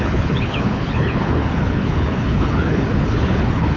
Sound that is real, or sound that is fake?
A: fake